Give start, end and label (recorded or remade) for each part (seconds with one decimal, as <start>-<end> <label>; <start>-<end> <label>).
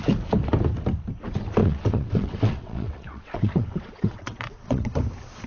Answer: 0.0-1.6 recorded; 1.6-4.9 remade; 4.9-5.5 recorded